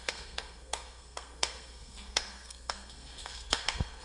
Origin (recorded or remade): remade